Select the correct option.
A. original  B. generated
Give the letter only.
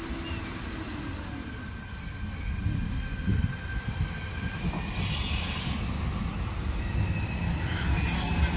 A